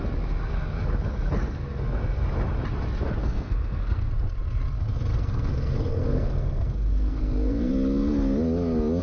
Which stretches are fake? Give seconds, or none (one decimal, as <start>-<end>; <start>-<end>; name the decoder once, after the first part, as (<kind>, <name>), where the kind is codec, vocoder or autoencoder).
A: 3.2-4.1 (codec, SNAC); 5.1-7.7